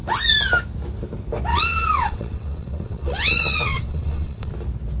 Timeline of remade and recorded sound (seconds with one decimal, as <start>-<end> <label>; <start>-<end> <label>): 0.0-1.5 recorded; 1.5-4.5 remade; 4.5-5.0 recorded